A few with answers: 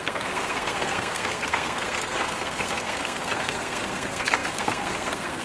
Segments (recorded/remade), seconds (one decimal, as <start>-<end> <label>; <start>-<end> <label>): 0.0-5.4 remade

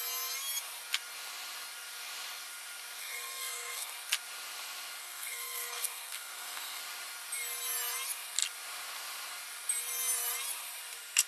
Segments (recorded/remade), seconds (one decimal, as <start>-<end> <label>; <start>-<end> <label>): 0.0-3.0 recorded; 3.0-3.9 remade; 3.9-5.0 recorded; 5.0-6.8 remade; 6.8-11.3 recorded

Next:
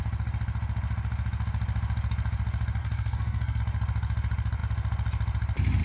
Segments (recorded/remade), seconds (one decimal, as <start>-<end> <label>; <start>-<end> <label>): 0.0-2.8 recorded; 2.8-3.6 remade; 3.6-5.8 recorded

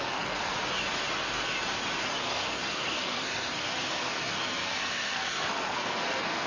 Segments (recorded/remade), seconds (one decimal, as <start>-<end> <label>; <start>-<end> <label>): 0.0-0.5 remade; 0.5-2.2 recorded; 2.2-6.5 remade

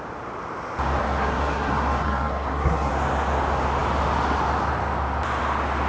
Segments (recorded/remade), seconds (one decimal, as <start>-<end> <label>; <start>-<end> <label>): 0.0-1.0 recorded; 1.0-2.9 remade; 2.9-5.9 recorded

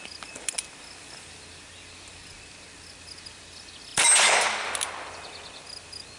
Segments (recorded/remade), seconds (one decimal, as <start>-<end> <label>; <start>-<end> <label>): 0.0-6.2 recorded